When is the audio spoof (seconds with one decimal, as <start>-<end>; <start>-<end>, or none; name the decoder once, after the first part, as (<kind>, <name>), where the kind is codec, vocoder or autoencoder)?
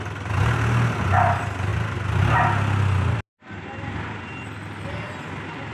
none